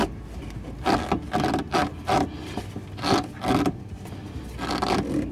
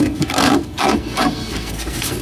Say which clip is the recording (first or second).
first